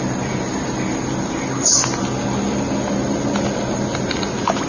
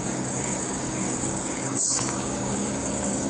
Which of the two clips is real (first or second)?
first